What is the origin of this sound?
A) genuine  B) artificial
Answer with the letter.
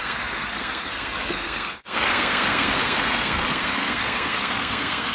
B